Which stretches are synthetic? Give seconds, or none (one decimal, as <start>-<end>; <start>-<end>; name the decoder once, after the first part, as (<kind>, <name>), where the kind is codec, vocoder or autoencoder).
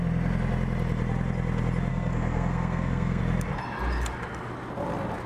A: 1.9-3.2 (codec, SNAC)